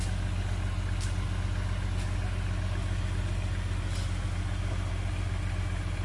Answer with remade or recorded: recorded